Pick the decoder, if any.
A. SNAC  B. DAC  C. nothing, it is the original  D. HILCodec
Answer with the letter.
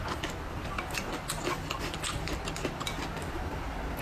C